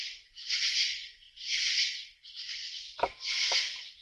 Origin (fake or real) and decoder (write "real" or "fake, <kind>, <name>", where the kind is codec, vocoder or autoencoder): real